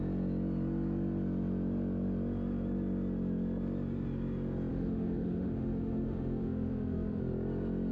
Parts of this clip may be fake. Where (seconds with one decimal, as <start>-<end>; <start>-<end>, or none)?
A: 4.7-7.2